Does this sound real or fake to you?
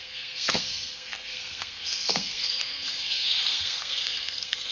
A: fake